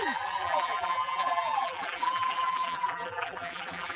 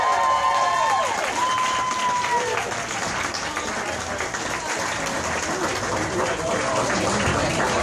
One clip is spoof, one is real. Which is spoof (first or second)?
first